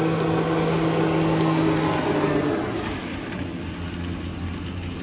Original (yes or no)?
yes